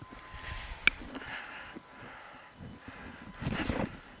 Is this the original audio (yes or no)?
yes